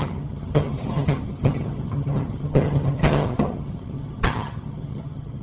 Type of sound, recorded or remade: remade